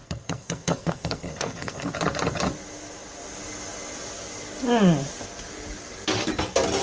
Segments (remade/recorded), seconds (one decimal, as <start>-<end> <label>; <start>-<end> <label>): 0.0-1.9 remade; 1.9-6.8 recorded